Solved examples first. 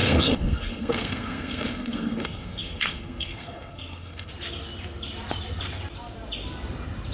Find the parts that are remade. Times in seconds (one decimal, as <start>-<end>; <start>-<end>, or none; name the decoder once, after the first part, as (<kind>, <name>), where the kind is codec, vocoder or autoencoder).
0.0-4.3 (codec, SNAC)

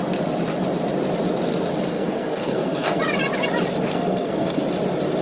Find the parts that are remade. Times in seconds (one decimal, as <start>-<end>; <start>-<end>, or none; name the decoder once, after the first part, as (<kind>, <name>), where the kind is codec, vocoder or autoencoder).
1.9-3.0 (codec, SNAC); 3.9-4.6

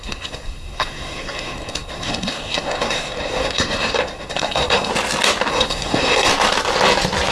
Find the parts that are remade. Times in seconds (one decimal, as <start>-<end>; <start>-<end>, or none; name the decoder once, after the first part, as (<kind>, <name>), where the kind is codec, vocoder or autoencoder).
0.0-4.9 (codec, SNAC); 5.5-6.3